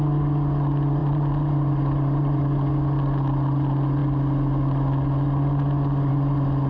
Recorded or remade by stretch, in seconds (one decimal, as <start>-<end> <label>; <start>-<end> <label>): 0.0-1.0 recorded; 1.0-2.4 remade; 2.4-6.7 recorded

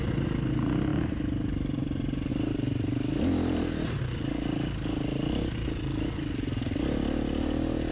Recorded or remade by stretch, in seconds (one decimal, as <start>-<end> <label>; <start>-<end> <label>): 0.0-0.9 recorded; 0.9-2.3 remade; 2.3-7.9 recorded

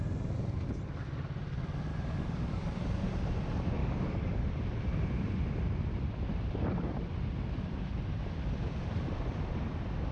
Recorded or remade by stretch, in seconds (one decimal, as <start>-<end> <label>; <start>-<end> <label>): 0.0-1.9 recorded; 1.9-2.7 remade; 2.7-3.8 recorded; 3.8-4.4 remade; 4.4-10.1 recorded